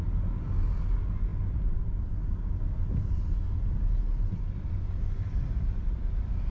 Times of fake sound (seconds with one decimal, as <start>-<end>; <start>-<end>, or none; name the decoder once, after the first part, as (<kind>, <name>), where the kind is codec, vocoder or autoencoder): none